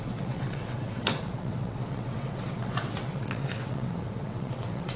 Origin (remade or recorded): remade